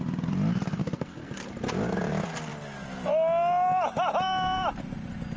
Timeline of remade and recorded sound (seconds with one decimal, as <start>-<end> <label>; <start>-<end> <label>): 0.0-0.8 recorded; 0.8-1.3 remade; 1.3-5.4 recorded